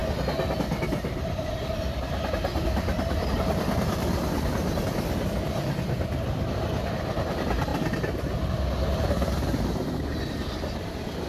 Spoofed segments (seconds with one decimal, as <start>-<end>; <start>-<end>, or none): 0.8-7.7; 9.1-11.3